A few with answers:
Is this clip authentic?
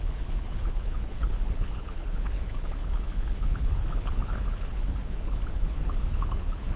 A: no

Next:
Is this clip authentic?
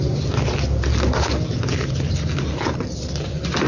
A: yes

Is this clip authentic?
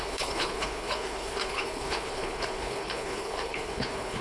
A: no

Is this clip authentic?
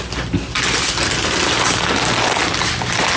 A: yes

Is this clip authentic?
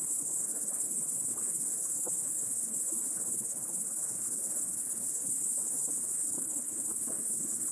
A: no